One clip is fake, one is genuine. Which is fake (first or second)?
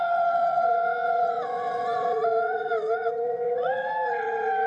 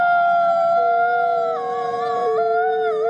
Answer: first